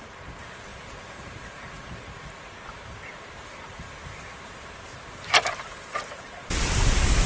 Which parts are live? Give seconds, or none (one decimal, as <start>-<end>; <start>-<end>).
0.0-7.3

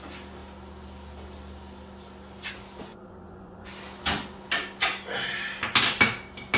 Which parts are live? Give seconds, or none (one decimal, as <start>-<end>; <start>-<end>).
0.0-2.9; 3.7-6.6

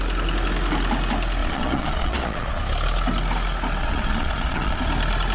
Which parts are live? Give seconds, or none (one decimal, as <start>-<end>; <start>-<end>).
0.0-1.4; 2.6-3.8; 4.8-5.3

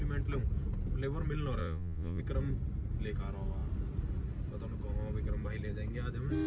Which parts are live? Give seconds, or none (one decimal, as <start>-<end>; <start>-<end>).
0.0-1.6; 2.2-6.5